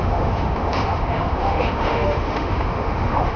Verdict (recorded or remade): remade